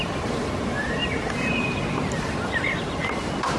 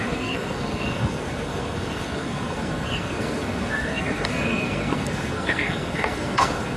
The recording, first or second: first